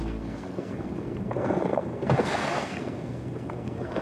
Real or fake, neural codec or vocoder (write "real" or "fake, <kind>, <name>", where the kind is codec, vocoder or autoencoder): fake, codec, SNAC